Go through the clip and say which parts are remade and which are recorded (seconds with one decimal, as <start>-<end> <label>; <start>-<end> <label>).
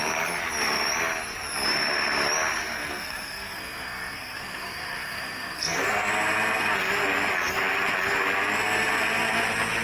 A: 0.0-2.6 recorded; 2.6-6.1 remade; 6.1-9.8 recorded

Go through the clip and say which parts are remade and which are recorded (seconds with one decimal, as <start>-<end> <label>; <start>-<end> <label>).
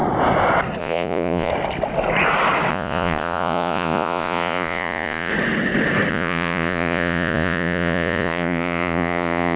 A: 0.0-0.8 recorded; 0.8-1.5 remade; 1.5-2.7 recorded; 2.7-5.3 remade; 5.3-6.1 recorded; 6.1-9.6 remade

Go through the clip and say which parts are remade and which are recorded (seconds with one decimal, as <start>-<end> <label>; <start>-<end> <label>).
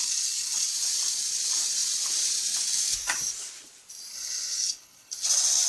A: 0.0-0.7 remade; 0.7-4.1 recorded; 4.1-5.1 remade; 5.1-5.7 recorded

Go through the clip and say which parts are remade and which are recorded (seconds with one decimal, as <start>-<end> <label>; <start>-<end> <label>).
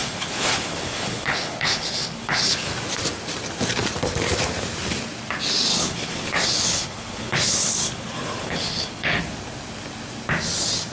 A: 0.0-2.7 remade; 2.7-5.7 recorded; 5.7-9.2 remade; 9.2-10.9 recorded